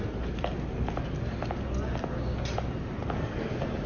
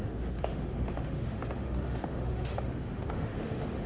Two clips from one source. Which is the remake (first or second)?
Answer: second